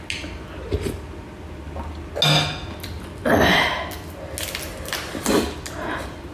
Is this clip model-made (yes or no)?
no